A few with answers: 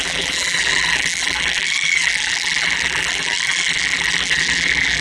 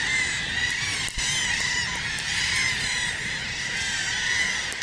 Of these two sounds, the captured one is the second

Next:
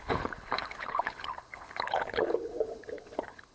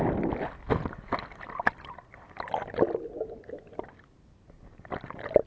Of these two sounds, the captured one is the second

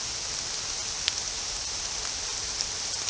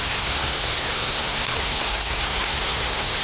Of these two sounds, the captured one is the first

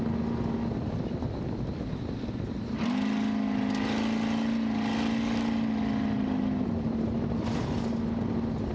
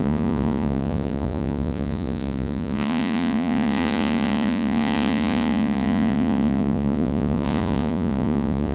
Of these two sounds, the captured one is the first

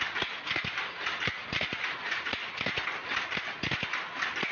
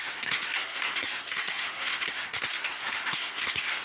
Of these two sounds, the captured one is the first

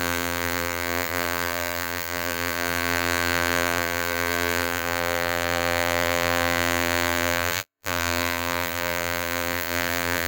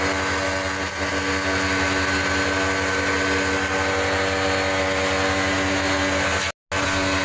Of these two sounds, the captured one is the second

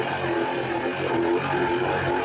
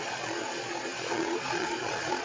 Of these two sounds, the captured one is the first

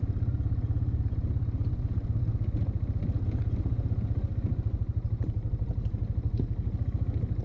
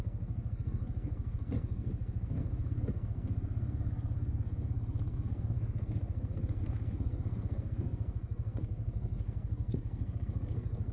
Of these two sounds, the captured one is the first